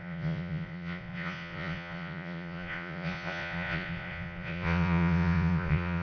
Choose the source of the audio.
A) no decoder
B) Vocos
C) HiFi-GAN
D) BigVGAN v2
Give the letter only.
B